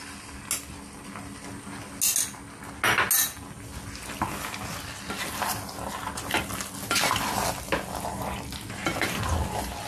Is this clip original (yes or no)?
yes